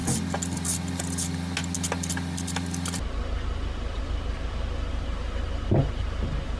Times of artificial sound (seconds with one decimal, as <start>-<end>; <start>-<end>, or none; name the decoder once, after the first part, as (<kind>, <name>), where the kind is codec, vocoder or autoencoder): none